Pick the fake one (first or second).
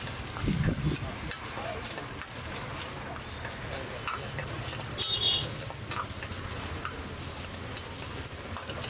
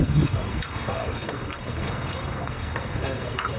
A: second